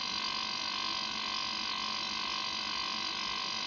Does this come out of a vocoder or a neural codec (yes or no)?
no